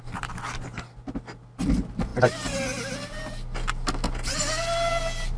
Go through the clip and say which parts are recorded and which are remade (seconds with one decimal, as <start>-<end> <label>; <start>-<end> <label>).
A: 0.0-5.4 recorded